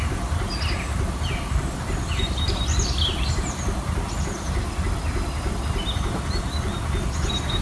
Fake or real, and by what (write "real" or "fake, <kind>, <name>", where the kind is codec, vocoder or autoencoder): fake, vocoder, BigVGAN v2